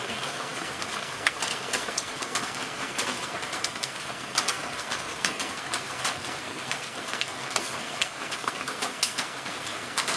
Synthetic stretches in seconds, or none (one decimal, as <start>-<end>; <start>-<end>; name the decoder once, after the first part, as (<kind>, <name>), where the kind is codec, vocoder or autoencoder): 0.0-10.2 (codec, SNAC)